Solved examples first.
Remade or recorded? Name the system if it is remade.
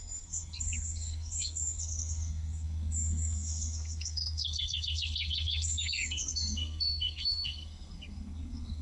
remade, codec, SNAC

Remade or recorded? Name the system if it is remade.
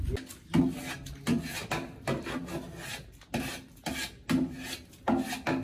recorded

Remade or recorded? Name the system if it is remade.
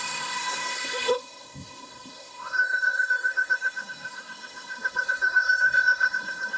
remade, codec, SNAC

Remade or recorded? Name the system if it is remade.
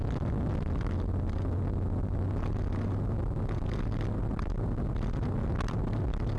recorded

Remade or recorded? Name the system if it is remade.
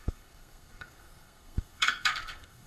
remade, codec, SNAC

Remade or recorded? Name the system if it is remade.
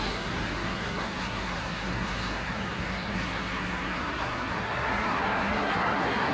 remade, codec, SNAC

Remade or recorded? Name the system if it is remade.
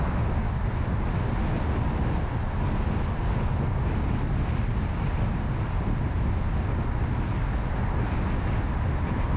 recorded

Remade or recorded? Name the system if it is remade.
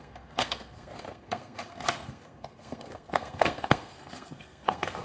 remade, codec, SNAC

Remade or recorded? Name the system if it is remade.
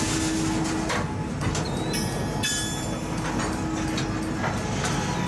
recorded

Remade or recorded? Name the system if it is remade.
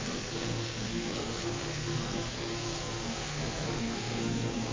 remade, codec, SNAC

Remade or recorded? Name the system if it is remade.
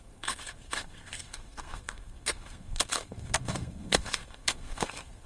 remade, codec, SNAC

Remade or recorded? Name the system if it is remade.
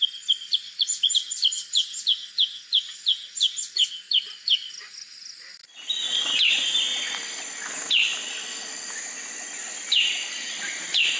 recorded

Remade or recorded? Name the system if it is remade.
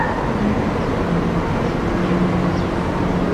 recorded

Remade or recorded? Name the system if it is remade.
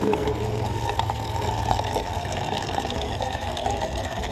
remade, codec, SNAC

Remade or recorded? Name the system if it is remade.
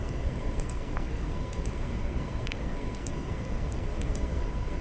remade, codec, SNAC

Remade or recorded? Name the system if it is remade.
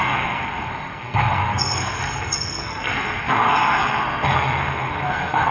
remade, codec, SNAC